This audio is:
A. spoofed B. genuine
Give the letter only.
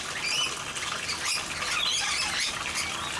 B